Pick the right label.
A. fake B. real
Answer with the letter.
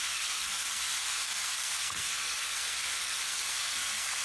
A